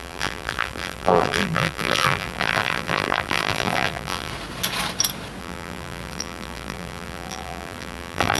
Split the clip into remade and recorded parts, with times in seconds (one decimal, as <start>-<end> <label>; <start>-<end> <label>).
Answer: 0.0-4.3 remade; 4.3-5.4 recorded; 5.4-8.4 remade